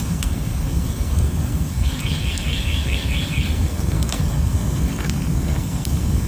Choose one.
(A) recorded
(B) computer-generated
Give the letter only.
B